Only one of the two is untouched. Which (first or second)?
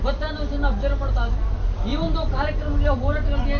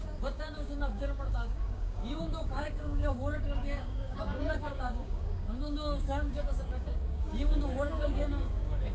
first